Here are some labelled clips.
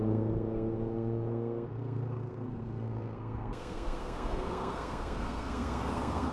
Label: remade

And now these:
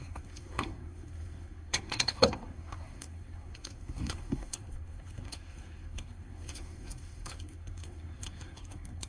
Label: remade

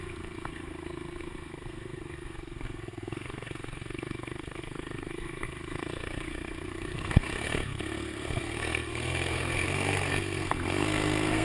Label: remade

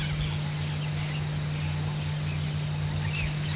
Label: recorded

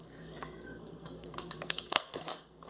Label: remade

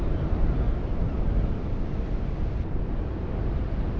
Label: recorded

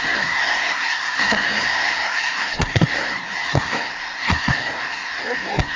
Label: remade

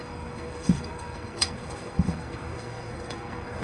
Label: remade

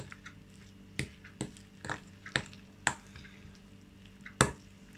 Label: recorded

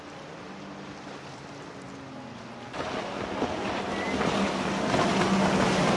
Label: recorded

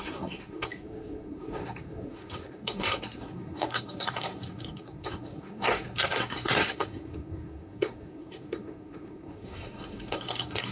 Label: remade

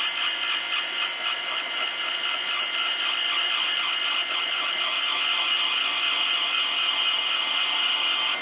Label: recorded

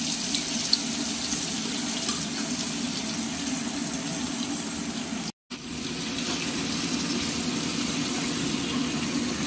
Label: recorded